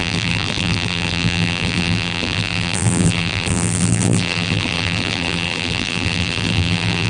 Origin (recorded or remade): remade